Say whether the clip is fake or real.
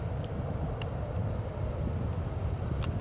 real